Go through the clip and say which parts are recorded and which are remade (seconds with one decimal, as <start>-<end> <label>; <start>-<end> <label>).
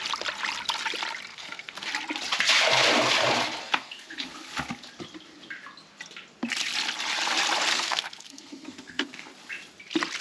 0.0-1.3 recorded; 1.3-1.9 remade; 1.9-3.6 recorded; 3.6-4.3 remade; 4.3-7.7 recorded; 7.7-9.3 remade; 9.3-10.2 recorded